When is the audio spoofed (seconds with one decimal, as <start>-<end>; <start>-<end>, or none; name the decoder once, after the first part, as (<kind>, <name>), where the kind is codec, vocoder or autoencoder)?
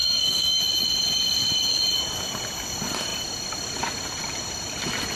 0.0-0.6 (codec, SNAC)